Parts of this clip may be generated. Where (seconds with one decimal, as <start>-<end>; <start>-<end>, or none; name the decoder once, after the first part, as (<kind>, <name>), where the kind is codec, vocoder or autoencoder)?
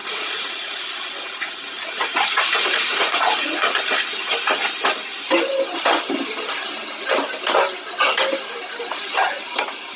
0.0-3.8 (vocoder, Vocos)